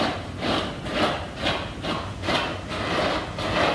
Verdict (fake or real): real